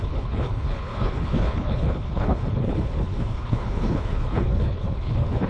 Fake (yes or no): yes